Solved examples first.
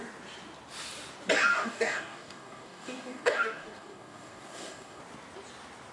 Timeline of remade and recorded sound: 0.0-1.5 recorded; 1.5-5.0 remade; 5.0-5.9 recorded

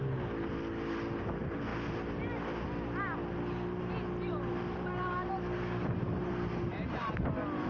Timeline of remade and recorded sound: 0.0-7.7 recorded

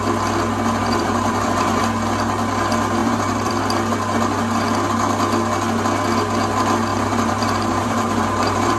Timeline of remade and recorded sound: 0.0-0.8 recorded; 0.8-1.8 remade; 1.8-3.0 recorded; 3.0-3.5 remade; 3.5-6.9 recorded; 6.9-8.8 remade

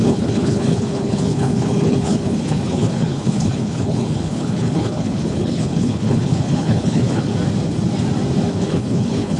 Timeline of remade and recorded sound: 0.0-7.3 remade; 7.3-8.5 recorded; 8.5-9.4 remade